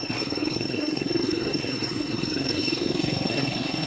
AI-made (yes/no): yes